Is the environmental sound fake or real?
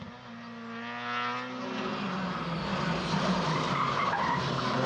real